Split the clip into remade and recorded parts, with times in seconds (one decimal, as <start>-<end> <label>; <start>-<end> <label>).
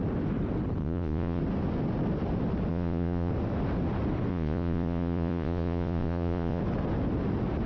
0.0-0.8 recorded; 0.8-1.4 remade; 1.4-2.7 recorded; 2.7-3.3 remade; 3.3-4.3 recorded; 4.3-6.6 remade; 6.6-7.7 recorded